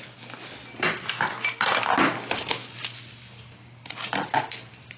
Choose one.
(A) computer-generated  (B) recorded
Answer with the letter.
B